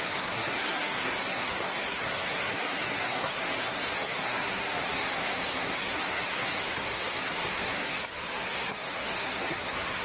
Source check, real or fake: fake